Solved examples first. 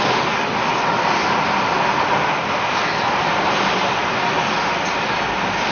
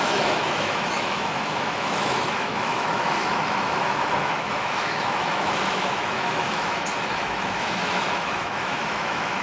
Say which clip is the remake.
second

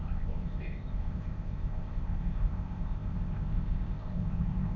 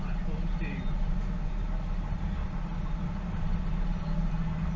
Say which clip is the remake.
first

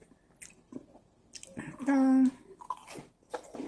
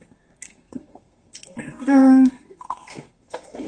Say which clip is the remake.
second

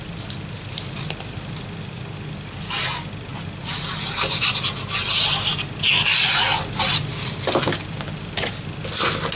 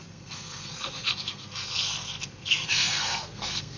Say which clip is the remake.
second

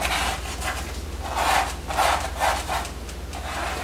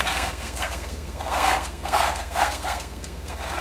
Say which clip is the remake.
second